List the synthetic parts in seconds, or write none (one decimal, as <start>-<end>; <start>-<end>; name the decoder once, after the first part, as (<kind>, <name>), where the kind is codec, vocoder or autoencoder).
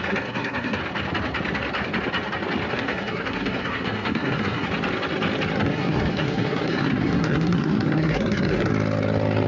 0.0-0.8 (codec, SNAC); 2.7-4.7; 5.6-8.7